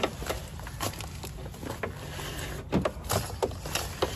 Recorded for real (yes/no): yes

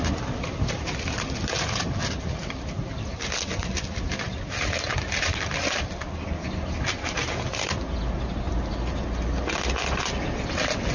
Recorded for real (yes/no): yes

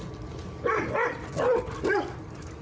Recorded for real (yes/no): no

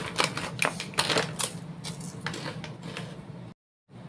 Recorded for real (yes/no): yes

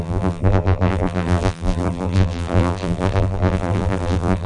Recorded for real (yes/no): no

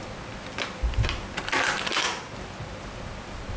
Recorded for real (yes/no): yes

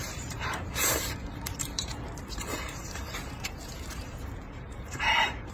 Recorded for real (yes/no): no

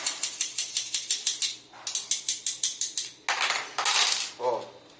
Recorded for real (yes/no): yes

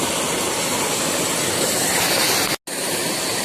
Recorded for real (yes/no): yes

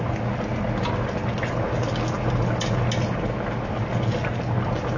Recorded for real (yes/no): yes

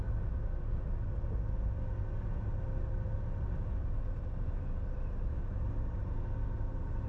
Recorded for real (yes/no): yes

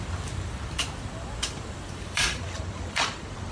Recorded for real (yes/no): no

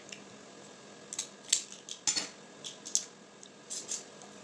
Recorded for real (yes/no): yes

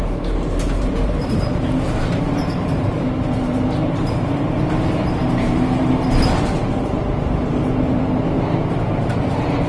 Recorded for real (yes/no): no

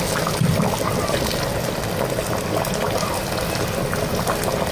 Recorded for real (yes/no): yes